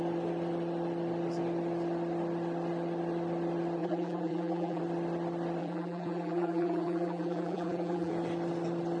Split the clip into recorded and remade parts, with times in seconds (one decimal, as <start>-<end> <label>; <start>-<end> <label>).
0.0-3.8 recorded; 3.8-4.8 remade; 4.8-5.6 recorded; 5.6-8.1 remade; 8.1-9.0 recorded